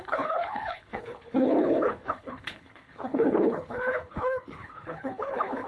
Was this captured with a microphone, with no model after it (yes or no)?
no